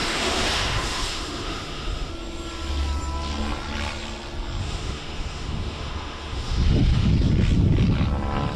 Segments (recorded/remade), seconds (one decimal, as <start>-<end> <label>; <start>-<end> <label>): 0.0-2.1 remade; 2.1-4.6 recorded; 4.6-7.1 remade; 7.1-8.6 recorded